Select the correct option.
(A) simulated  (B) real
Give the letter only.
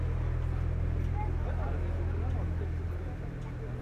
B